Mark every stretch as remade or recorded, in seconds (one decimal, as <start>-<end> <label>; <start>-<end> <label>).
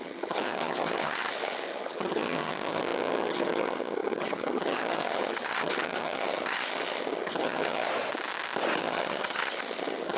0.0-7.9 remade; 7.9-8.8 recorded; 8.8-10.2 remade